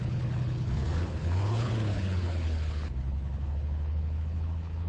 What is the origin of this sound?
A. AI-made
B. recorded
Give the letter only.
A